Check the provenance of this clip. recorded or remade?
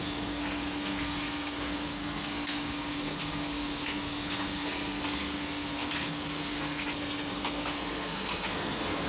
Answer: remade